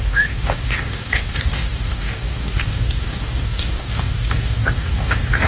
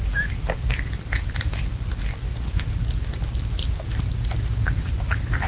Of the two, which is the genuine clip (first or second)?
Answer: second